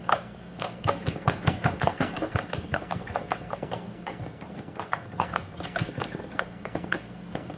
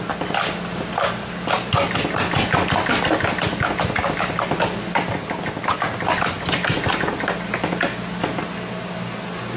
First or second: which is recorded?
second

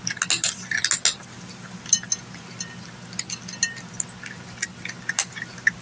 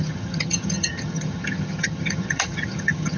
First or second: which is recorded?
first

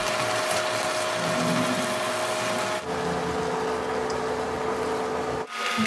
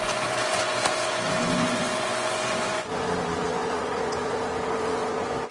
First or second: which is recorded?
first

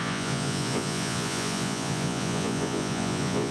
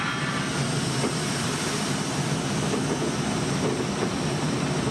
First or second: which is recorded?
second